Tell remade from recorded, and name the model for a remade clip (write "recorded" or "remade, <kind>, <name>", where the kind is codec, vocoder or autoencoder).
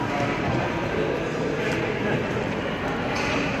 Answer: recorded